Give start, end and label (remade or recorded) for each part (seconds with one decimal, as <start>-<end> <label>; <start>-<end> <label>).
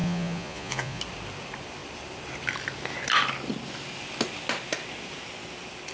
0.0-1.0 remade; 1.0-5.9 recorded